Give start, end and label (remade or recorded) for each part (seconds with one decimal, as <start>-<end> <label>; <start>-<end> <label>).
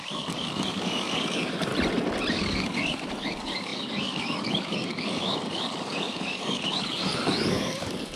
0.0-1.7 remade; 1.7-2.3 recorded; 2.3-8.2 remade